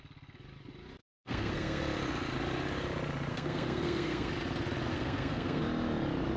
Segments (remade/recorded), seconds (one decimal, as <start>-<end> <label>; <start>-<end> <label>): 0.0-1.0 recorded; 1.0-1.8 remade; 1.8-3.3 recorded; 3.3-4.3 remade; 4.3-4.9 recorded; 4.9-5.6 remade; 5.6-6.4 recorded